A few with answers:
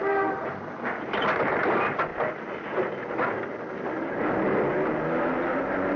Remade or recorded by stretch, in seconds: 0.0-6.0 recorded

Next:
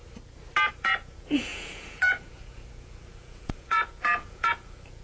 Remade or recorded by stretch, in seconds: 0.0-0.7 recorded; 0.7-5.0 remade

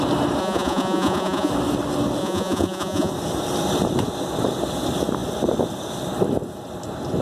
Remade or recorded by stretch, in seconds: 0.0-0.4 recorded; 0.4-1.5 remade; 1.5-2.2 recorded; 2.2-3.1 remade; 3.1-7.2 recorded